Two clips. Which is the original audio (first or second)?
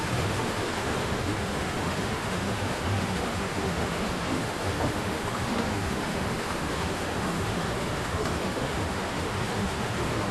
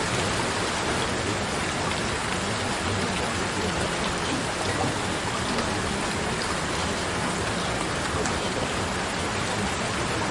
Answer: second